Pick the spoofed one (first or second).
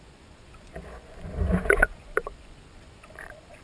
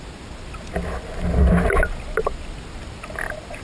first